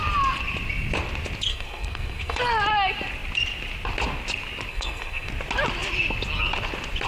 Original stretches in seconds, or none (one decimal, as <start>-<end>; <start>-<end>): 0.0-1.5; 2.4-4.7; 5.3-7.1